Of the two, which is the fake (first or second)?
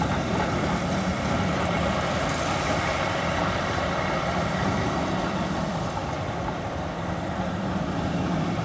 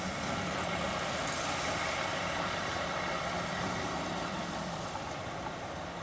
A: first